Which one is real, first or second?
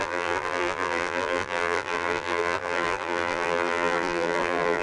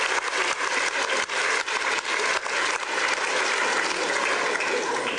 second